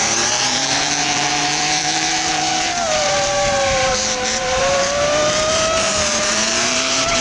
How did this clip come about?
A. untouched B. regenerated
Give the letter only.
B